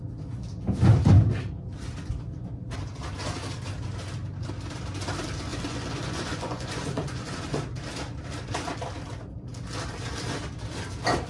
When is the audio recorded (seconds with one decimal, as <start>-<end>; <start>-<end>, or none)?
0.0-5.5; 7.6-11.3